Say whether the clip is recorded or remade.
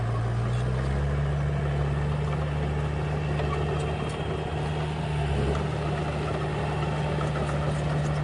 recorded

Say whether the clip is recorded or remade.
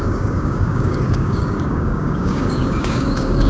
remade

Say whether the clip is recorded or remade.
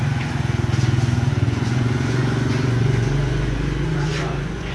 remade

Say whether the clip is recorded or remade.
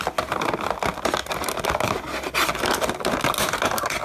recorded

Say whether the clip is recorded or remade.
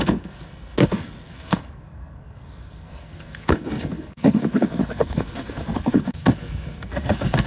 remade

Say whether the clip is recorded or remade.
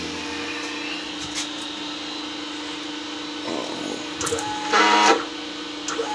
recorded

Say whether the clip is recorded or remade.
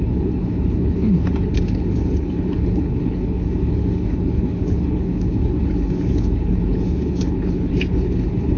remade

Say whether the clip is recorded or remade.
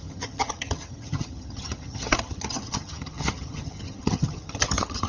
remade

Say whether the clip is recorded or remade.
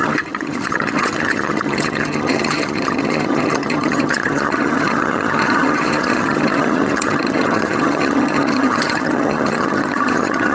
remade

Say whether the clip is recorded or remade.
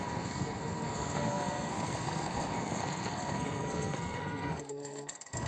remade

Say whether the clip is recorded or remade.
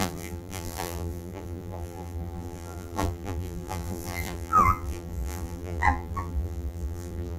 remade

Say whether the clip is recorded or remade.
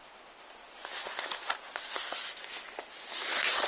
recorded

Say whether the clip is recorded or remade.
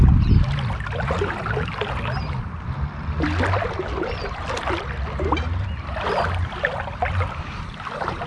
recorded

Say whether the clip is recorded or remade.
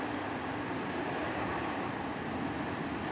recorded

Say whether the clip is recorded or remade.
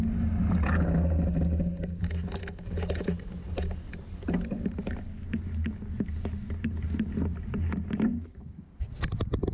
recorded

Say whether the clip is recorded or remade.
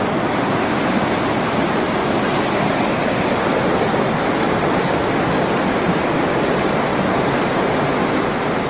recorded